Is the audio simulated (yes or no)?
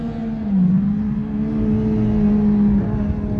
no